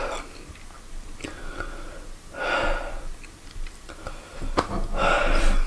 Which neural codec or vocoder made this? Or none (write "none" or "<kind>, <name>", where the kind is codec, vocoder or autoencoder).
none